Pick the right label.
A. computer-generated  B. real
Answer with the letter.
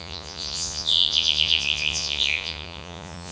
A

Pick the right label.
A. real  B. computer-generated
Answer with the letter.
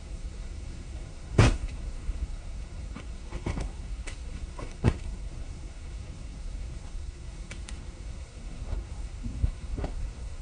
B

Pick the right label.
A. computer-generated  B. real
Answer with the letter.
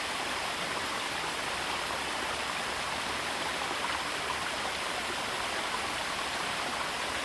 B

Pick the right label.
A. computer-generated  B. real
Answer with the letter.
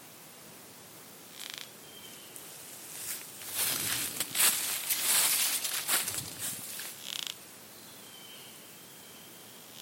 B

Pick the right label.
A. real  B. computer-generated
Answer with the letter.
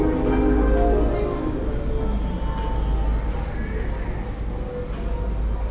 A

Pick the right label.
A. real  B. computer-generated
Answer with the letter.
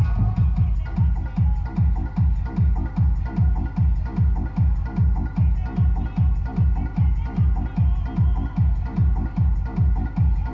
A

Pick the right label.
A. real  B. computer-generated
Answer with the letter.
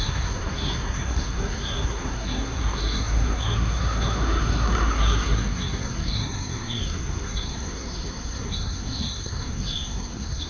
B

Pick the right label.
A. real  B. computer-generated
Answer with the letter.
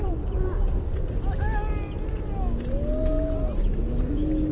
A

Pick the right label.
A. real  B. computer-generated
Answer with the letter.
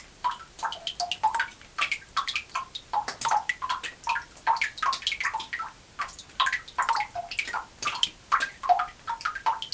A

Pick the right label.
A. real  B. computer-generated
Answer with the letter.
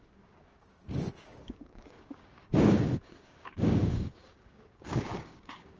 B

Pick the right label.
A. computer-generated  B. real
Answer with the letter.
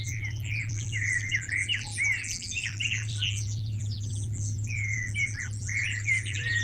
A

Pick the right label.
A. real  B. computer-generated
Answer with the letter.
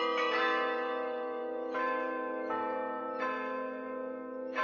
B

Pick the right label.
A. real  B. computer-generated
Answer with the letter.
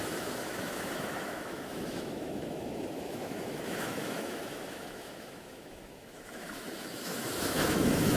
B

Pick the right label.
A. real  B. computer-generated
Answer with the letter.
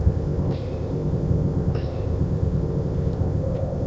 B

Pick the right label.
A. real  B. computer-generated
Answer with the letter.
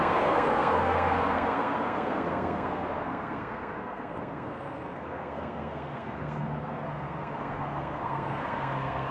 B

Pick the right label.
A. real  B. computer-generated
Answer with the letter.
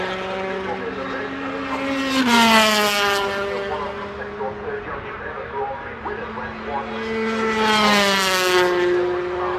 A